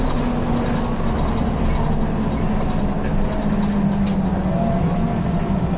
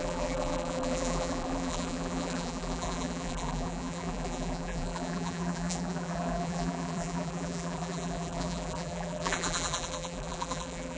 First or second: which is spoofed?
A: second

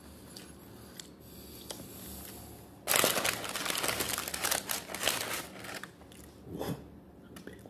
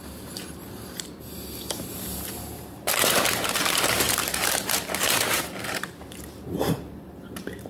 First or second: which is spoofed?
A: second